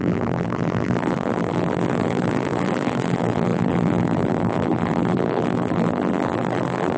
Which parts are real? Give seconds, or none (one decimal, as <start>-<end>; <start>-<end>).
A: none